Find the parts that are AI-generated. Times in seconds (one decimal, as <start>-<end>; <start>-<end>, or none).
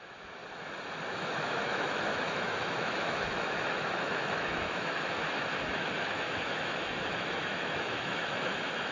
0.0-0.4; 1.1-8.9